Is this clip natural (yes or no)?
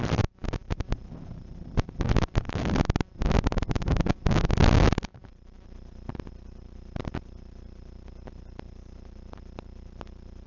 yes